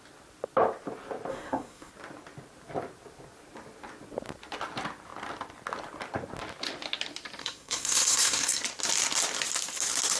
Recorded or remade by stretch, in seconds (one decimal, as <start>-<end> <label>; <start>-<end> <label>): 0.0-1.3 recorded; 1.3-1.9 remade; 1.9-7.4 recorded; 7.4-8.6 remade; 8.6-10.2 recorded